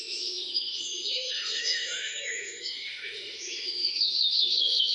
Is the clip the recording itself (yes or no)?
no